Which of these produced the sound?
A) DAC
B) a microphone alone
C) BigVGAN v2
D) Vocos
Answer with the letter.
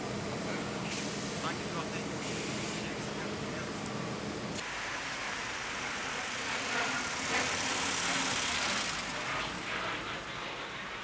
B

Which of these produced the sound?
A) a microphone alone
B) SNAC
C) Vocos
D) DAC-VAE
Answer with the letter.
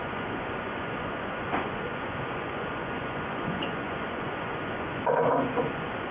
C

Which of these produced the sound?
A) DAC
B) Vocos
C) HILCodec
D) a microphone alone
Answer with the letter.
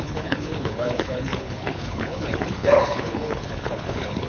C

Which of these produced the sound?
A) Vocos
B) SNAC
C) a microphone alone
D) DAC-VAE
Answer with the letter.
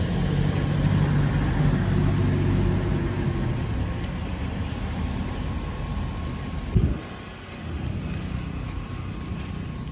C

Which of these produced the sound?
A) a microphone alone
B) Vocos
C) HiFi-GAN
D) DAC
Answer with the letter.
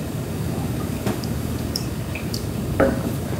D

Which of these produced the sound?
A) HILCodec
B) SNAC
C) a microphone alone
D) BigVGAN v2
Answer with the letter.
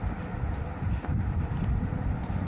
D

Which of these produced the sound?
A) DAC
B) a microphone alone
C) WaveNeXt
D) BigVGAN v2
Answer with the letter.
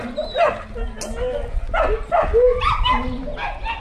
B